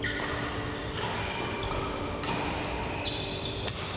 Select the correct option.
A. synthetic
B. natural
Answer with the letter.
B